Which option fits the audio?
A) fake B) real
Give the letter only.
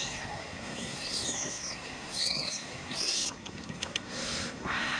A